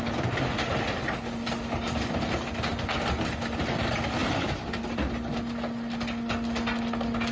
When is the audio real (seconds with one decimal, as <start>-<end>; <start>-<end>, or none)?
0.0-7.3